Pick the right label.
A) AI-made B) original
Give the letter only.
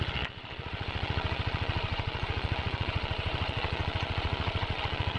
A